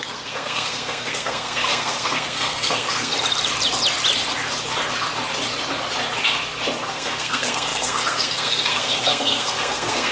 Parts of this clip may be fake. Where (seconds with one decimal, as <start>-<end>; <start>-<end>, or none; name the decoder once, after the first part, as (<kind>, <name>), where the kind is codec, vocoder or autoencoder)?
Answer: 0.0-3.1 (codec, SNAC); 6.9-10.1